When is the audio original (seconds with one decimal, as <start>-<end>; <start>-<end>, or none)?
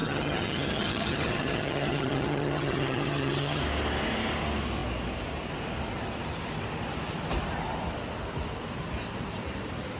3.6-10.0